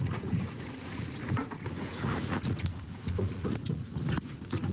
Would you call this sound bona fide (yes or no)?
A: no